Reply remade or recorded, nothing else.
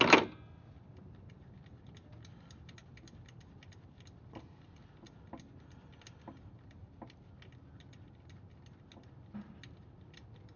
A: recorded